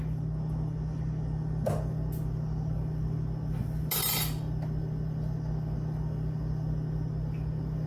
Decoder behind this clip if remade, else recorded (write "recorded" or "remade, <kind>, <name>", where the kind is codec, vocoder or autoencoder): recorded